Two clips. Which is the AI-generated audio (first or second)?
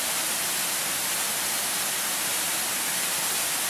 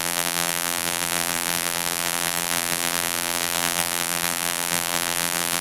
second